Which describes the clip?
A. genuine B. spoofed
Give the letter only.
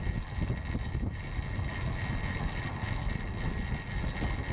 A